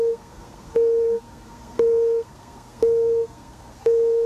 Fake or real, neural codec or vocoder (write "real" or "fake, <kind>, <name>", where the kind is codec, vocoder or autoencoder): fake, codec, SNAC